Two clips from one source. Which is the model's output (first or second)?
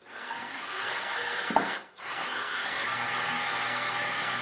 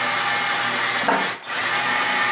first